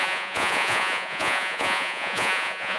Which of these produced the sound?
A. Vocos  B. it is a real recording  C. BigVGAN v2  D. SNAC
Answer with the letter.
A